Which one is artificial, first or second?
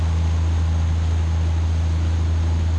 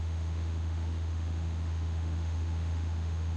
second